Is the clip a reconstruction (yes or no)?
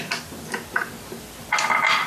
no